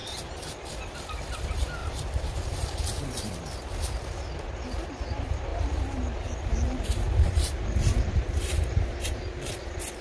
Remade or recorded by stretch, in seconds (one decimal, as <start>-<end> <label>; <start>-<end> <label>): 0.0-0.7 remade; 0.7-1.8 recorded; 1.8-3.4 remade; 3.4-5.5 recorded; 5.5-9.5 remade; 9.5-10.0 recorded

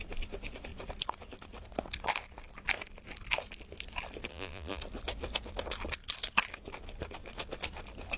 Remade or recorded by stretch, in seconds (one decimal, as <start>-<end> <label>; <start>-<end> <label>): 0.0-4.3 recorded; 4.3-4.8 remade; 4.8-8.2 recorded

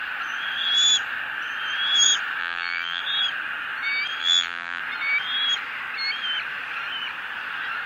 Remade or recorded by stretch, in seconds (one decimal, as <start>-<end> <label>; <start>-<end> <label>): 0.0-2.4 recorded; 2.4-3.0 remade; 3.0-4.2 recorded; 4.2-4.8 remade; 4.8-7.9 recorded